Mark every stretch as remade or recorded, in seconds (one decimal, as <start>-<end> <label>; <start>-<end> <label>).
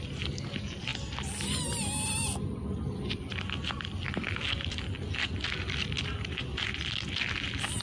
0.0-7.8 recorded